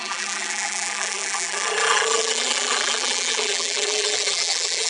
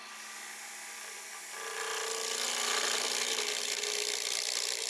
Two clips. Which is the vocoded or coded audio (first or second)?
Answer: first